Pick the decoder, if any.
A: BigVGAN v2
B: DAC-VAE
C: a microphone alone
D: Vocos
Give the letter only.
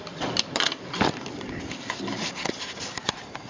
C